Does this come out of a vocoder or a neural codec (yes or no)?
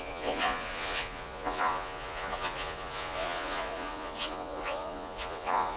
yes